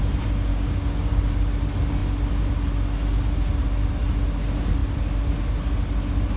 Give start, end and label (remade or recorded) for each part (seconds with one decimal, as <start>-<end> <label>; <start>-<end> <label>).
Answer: 0.0-0.5 recorded; 0.5-1.2 remade; 1.2-6.4 recorded